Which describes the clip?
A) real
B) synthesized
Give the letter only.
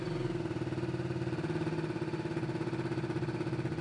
A